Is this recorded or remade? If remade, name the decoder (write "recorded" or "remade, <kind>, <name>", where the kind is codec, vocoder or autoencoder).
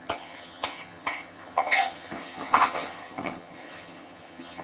remade, vocoder, HiFi-GAN